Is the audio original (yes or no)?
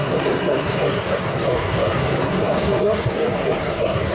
no